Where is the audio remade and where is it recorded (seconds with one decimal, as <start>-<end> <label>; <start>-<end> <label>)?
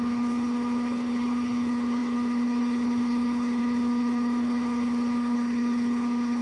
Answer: 0.0-6.4 remade